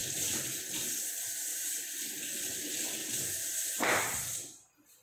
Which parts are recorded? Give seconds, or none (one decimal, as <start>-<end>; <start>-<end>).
0.0-1.5; 2.0-5.0